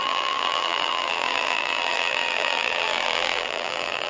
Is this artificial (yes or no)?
yes